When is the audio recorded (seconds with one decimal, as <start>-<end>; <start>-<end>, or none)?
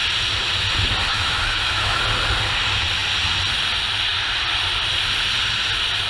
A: 0.0-1.1; 2.0-6.1